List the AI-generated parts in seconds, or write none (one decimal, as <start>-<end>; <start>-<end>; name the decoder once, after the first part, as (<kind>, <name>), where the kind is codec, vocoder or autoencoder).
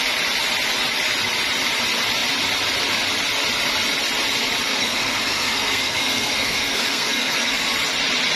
4.7-7.6 (codec, SNAC)